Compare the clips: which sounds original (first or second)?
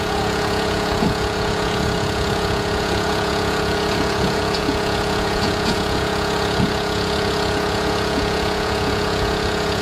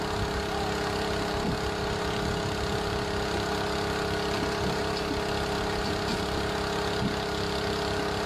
second